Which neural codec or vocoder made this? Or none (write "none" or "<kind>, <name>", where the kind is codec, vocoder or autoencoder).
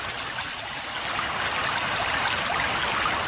none